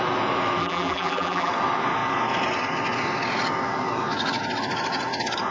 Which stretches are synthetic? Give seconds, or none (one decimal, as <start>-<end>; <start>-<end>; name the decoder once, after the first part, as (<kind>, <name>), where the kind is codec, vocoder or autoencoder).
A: 0.6-1.5 (vocoder, BigVGAN v2)